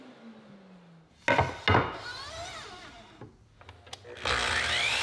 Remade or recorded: recorded